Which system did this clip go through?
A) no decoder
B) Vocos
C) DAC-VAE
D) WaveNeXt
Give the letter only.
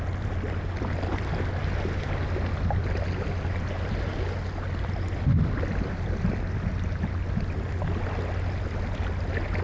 A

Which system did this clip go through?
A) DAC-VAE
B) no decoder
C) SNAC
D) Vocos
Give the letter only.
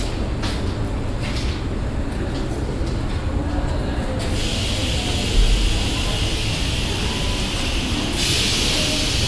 B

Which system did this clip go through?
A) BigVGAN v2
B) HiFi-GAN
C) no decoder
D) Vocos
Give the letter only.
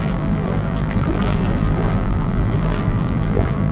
A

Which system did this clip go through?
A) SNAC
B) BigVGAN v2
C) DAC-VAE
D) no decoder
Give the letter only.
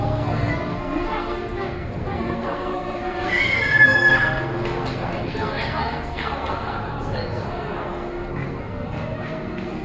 A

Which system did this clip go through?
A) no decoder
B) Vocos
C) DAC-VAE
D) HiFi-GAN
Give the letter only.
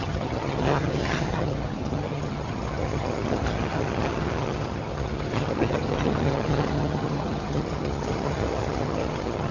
D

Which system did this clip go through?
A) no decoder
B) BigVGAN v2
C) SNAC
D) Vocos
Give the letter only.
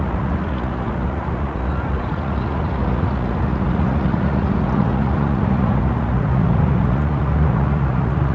D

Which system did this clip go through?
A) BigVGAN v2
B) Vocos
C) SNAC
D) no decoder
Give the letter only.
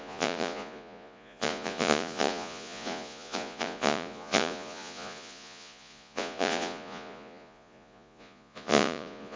B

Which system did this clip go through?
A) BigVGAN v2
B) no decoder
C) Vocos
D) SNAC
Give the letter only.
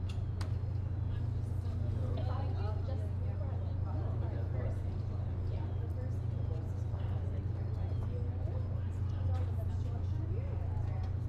B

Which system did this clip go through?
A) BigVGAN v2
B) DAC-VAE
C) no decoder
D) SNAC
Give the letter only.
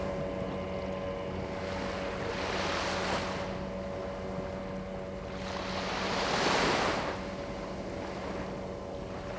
C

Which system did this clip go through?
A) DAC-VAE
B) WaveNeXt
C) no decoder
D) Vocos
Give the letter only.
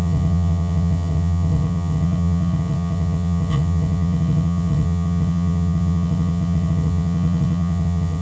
B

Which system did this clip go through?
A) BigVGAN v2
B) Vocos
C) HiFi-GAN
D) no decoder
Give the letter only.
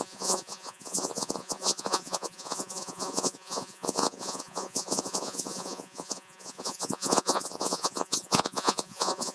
B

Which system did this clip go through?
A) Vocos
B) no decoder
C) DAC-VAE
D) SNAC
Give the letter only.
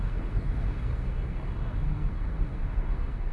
D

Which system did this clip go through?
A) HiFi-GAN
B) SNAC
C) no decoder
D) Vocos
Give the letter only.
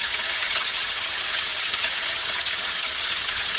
A